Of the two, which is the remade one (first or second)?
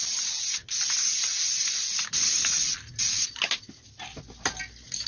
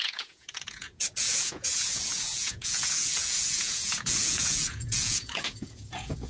second